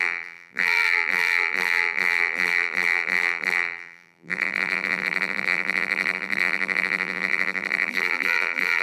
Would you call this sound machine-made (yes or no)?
yes